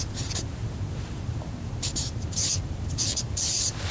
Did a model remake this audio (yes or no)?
yes